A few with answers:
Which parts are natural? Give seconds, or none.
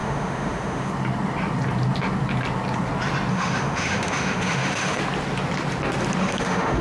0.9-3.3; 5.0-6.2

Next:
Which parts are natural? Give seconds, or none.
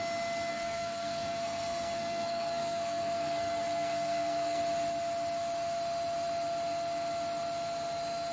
0.0-0.5; 4.6-8.3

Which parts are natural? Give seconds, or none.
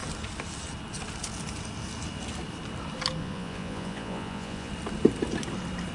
0.0-3.2; 4.7-5.9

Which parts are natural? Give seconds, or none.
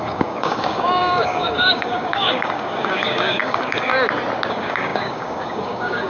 3.9-4.5